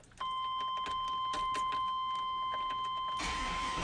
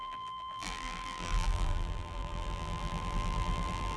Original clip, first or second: first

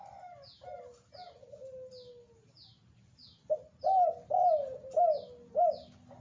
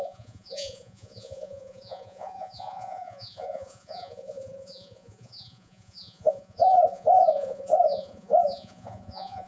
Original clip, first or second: first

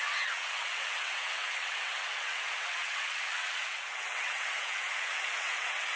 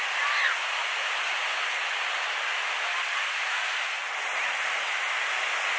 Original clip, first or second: second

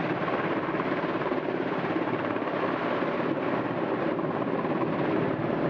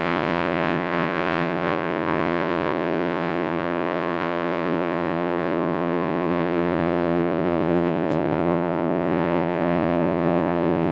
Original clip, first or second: first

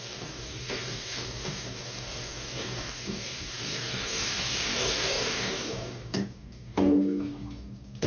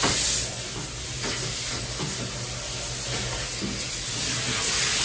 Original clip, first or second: second